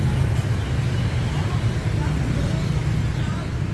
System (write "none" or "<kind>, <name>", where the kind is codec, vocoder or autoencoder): none